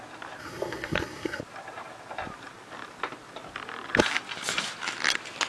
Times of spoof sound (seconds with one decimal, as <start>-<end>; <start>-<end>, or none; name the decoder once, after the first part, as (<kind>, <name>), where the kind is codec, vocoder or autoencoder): 0.4-1.4 (codec, SNAC)